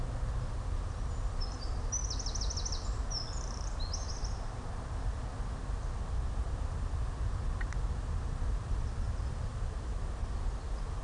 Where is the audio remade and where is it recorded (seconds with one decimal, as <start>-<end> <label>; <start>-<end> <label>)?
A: 0.0-11.0 recorded